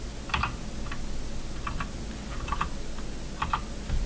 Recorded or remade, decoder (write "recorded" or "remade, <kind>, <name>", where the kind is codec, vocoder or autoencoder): recorded